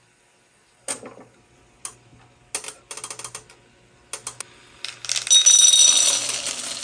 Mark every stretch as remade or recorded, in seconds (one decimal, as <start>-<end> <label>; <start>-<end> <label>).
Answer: 0.0-6.8 recorded